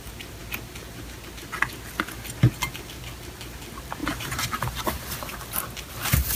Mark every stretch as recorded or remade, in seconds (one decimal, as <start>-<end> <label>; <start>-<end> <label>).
0.0-4.0 recorded; 4.0-5.2 remade; 5.2-6.4 recorded